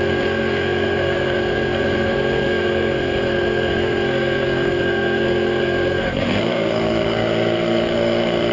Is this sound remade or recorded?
remade